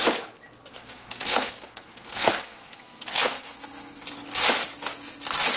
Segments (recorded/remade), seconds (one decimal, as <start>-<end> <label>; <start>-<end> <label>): 0.0-0.7 recorded; 0.7-4.1 remade; 4.1-5.6 recorded